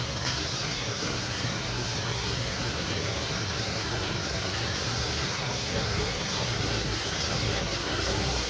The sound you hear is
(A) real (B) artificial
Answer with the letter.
B